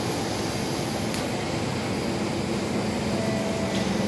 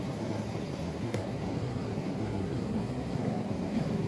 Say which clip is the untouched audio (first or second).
first